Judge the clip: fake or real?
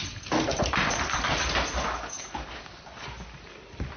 real